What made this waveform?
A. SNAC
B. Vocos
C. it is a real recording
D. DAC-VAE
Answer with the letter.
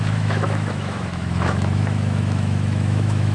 D